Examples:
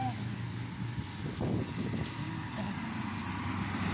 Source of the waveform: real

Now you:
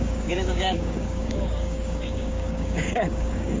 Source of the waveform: fake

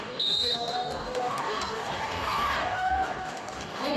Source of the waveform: fake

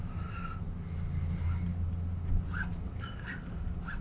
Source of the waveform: real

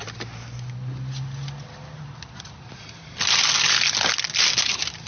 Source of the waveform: real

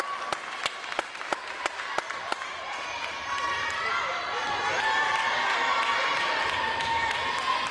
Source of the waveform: real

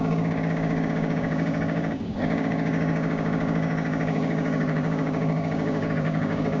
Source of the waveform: fake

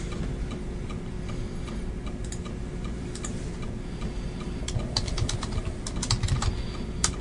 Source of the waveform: real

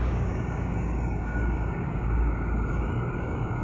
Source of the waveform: fake